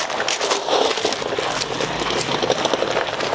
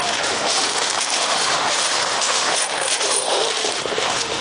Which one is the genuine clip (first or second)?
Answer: first